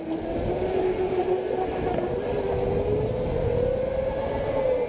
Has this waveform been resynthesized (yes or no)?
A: no